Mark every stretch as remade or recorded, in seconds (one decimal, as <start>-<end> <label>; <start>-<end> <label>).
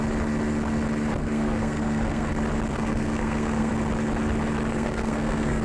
0.0-1.2 recorded; 1.2-2.3 remade; 2.3-2.7 recorded; 2.7-3.7 remade; 3.7-4.7 recorded; 4.7-5.6 remade